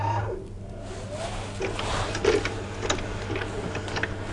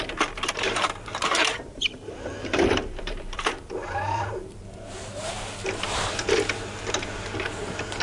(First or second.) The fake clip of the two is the second